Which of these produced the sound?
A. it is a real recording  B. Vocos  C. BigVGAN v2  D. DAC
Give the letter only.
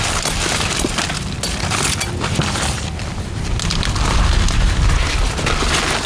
A